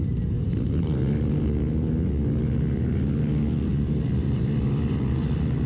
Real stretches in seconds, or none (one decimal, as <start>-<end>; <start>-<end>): 0.0-3.7; 4.4-5.7